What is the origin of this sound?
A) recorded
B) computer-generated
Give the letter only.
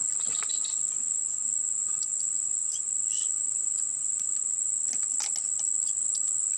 A